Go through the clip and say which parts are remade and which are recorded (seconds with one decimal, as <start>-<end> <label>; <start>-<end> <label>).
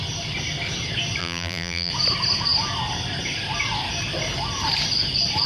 0.0-1.2 recorded; 1.2-1.9 remade; 1.9-5.5 recorded